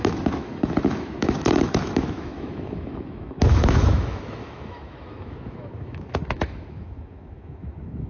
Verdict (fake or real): fake